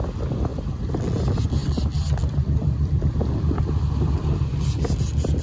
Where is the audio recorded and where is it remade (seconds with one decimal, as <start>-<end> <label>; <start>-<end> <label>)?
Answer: 0.0-5.4 recorded